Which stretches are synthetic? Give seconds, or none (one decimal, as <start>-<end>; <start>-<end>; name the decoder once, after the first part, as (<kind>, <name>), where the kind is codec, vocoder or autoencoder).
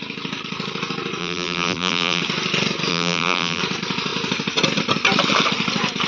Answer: 1.2-2.2 (vocoder, BigVGAN v2); 2.9-3.6